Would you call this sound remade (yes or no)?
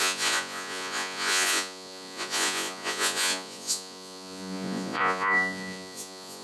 yes